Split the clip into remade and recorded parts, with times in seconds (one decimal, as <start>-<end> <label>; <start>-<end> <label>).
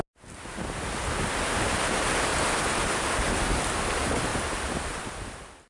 0.0-2.3 recorded; 2.3-3.6 remade; 3.6-4.3 recorded; 4.3-5.7 remade